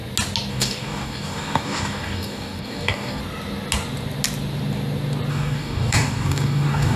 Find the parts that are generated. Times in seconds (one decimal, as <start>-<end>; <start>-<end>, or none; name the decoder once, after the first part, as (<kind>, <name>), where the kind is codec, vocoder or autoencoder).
0.5-3.2 (codec, DAC); 5.3-7.0